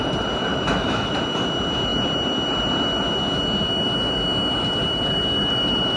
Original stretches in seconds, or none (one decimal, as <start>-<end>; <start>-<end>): 0.0-0.5; 1.1-6.0